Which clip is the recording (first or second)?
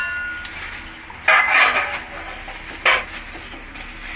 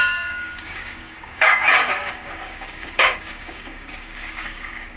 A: first